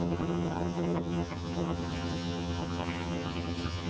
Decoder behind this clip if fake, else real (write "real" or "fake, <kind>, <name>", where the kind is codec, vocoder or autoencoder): fake, vocoder, HiFi-GAN